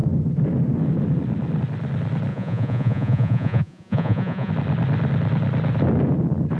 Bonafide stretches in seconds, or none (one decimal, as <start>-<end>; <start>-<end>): 0.0-2.3; 4.5-6.6